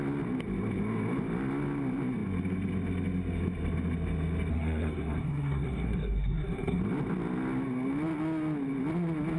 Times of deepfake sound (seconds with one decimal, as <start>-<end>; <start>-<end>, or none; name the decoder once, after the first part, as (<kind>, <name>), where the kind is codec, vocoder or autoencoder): 4.5-6.8 (codec, SNAC)